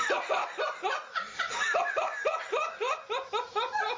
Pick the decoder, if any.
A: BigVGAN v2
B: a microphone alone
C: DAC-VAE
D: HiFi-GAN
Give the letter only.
B